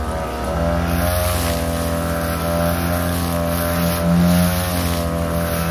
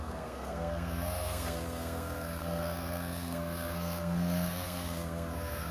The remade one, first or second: second